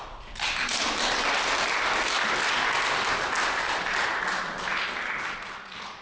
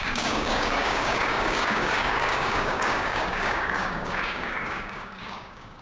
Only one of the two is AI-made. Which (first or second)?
second